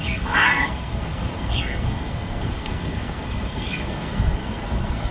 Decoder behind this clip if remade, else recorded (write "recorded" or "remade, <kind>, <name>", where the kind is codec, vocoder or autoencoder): remade, codec, SNAC